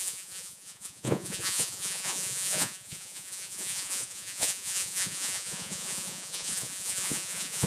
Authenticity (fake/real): fake